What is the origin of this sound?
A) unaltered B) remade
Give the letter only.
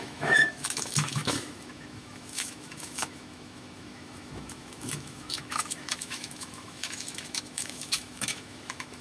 B